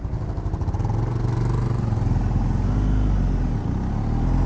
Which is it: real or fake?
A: real